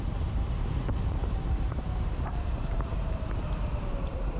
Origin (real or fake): fake